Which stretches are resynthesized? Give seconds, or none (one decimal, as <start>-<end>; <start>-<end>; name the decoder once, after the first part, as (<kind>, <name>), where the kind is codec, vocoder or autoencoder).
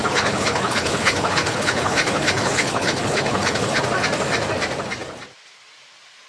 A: 0.0-3.8 (codec, HILCodec)